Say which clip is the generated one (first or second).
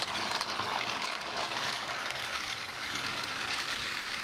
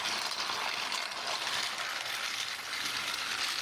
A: first